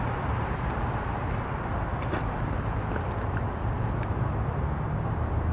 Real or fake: real